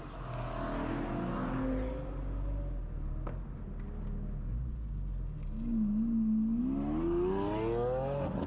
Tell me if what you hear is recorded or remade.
recorded